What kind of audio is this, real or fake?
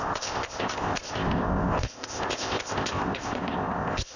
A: fake